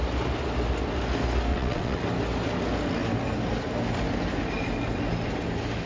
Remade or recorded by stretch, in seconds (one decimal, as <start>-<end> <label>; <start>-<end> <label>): 0.0-1.5 recorded; 1.5-2.0 remade; 2.0-5.9 recorded